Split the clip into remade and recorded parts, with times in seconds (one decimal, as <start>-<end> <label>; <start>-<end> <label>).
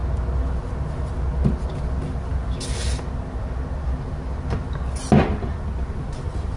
0.0-6.6 recorded